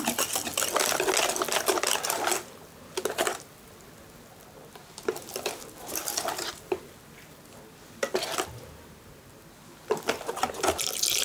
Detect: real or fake real